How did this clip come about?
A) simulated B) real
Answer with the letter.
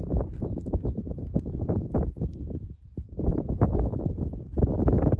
A